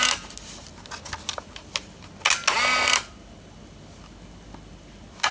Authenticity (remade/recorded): recorded